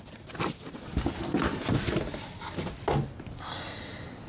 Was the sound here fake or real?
real